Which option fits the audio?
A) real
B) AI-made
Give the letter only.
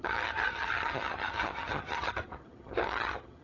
B